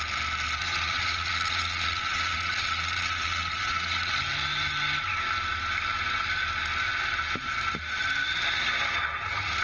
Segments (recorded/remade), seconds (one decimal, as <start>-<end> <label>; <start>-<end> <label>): 0.0-0.6 recorded; 0.6-4.1 remade; 4.1-9.6 recorded